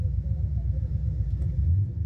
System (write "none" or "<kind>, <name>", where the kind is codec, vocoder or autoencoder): vocoder, BigVGAN v2